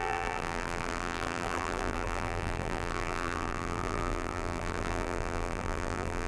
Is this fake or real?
fake